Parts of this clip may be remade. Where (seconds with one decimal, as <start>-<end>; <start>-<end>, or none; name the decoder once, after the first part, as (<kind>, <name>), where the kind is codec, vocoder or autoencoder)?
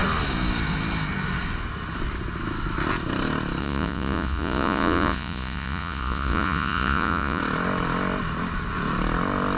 3.6-7.4 (vocoder, Vocos)